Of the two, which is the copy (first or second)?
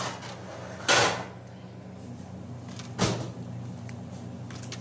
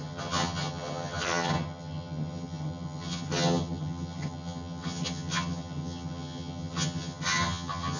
second